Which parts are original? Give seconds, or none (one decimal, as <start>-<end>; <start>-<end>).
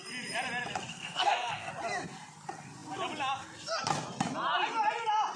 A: 0.0-0.9; 1.7-5.4